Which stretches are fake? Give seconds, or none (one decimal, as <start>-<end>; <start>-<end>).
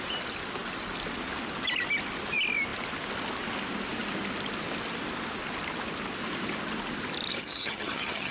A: 7.3-8.3